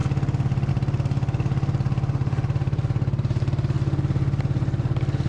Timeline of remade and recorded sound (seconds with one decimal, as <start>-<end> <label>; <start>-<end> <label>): 0.0-2.2 recorded; 2.2-3.5 remade; 3.5-5.3 recorded